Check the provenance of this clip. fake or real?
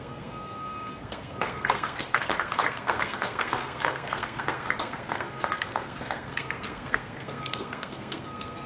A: fake